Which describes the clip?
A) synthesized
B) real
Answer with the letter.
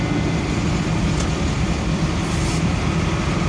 B